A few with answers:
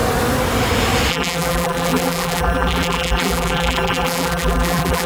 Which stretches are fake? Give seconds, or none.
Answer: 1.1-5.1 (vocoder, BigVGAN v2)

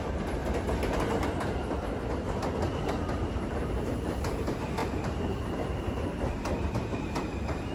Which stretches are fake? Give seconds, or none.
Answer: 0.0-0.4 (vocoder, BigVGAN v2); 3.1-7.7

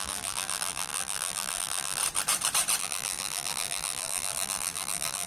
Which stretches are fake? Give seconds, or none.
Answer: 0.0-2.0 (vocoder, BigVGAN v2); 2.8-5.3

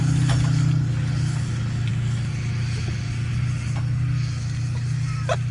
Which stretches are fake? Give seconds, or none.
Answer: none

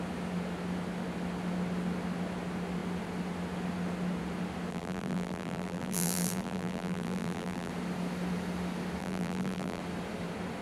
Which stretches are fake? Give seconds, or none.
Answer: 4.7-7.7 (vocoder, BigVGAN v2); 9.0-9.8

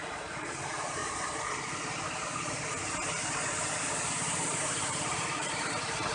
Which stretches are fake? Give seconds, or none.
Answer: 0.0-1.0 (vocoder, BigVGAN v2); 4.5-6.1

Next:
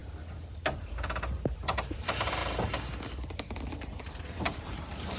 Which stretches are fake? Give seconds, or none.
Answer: 0.8-2.4 (vocoder, BigVGAN v2); 4.0-5.2

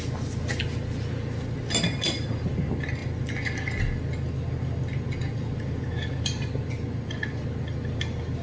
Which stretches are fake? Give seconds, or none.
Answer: none